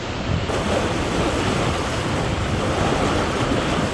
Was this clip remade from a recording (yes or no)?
no